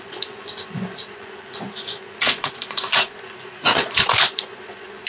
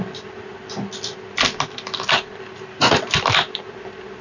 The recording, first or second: second